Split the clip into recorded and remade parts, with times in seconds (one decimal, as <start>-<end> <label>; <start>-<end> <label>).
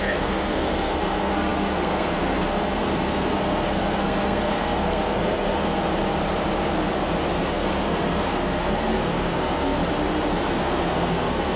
0.0-5.8 remade; 5.8-7.3 recorded; 7.3-9.8 remade; 9.8-10.5 recorded; 10.5-11.6 remade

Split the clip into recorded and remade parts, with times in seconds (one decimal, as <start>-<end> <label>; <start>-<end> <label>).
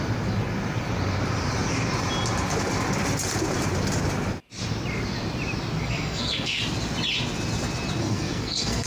0.0-5.8 recorded; 5.8-6.6 remade; 6.6-8.0 recorded; 8.0-8.9 remade